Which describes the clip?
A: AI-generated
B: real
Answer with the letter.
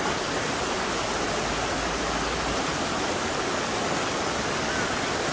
B